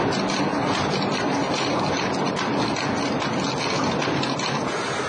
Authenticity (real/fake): real